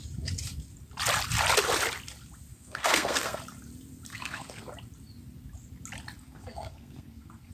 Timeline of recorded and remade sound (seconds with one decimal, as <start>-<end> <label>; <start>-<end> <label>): 0.0-2.5 recorded; 2.5-3.4 remade; 3.4-4.1 recorded; 4.1-4.7 remade; 4.7-6.2 recorded; 6.2-7.5 remade